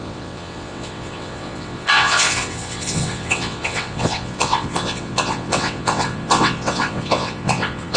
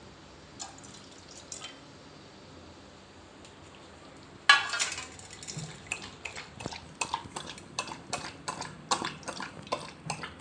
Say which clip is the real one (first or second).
second